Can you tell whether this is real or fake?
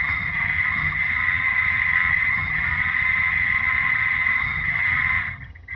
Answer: fake